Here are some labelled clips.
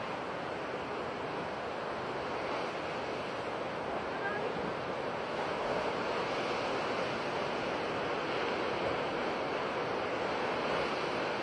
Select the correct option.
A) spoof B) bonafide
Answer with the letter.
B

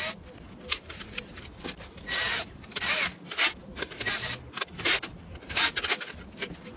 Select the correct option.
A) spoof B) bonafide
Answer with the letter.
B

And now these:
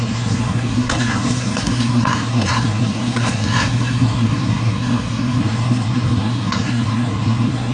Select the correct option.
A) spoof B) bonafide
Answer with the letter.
A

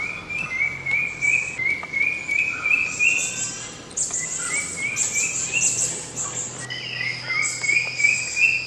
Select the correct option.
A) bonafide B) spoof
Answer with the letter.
A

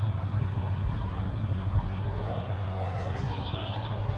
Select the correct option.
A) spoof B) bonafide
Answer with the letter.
A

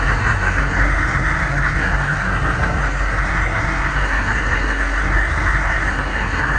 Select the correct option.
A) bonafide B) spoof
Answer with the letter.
B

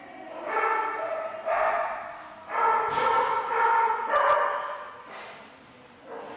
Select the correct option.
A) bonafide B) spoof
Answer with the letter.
A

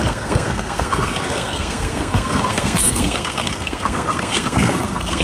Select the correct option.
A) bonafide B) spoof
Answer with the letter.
B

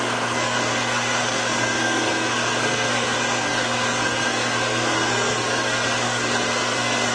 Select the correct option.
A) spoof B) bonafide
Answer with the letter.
A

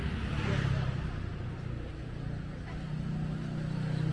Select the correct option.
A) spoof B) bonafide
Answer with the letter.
B